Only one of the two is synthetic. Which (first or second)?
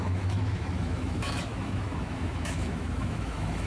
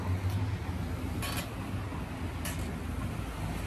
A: first